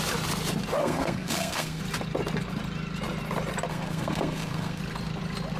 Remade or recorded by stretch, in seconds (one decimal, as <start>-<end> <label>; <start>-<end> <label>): 0.0-0.8 recorded; 0.8-1.8 remade; 1.8-3.7 recorded; 3.7-4.8 remade; 4.8-5.6 recorded